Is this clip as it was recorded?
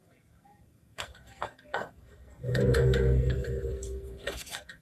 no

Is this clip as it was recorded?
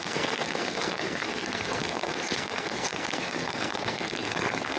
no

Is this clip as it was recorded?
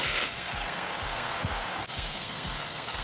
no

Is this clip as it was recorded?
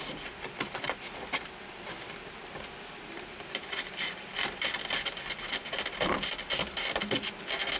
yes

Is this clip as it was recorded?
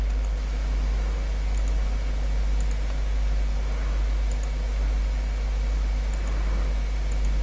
yes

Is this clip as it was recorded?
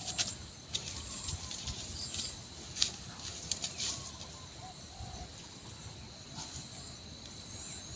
yes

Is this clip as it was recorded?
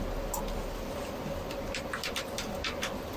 yes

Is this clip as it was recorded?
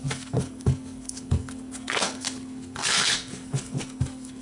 no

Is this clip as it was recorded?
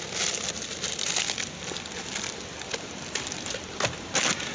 yes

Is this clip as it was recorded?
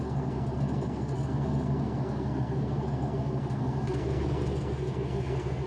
no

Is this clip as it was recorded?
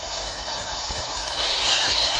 no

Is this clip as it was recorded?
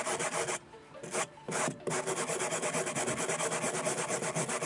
yes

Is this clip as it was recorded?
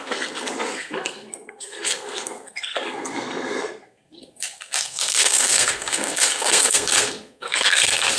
no